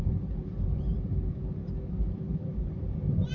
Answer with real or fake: fake